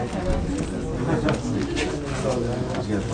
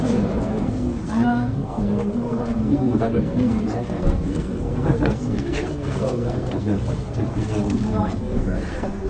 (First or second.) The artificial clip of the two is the second